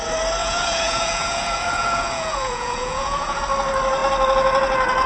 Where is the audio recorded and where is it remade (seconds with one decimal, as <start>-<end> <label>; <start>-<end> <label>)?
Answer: 0.0-0.4 recorded; 0.4-3.4 remade; 3.4-5.1 recorded